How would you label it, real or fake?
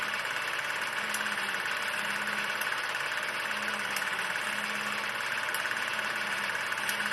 real